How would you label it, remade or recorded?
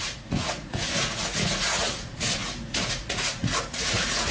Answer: remade